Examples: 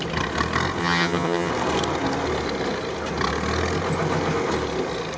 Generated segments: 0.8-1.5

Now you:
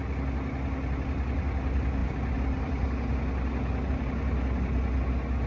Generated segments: none

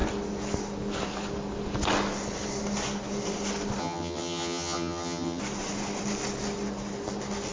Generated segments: 3.8-5.4